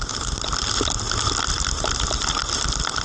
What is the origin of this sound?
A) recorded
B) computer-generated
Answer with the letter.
A